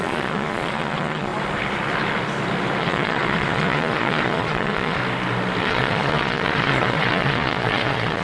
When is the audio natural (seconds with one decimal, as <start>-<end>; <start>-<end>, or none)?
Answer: 1.3-2.8; 5.0-5.6